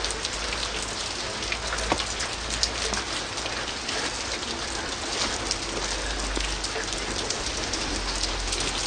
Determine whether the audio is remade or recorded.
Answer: recorded